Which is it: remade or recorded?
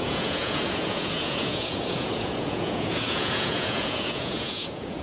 remade